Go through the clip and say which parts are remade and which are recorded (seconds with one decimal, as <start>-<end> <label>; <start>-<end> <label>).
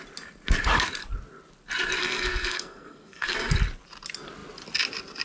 0.0-2.0 recorded; 2.0-3.5 remade; 3.5-5.2 recorded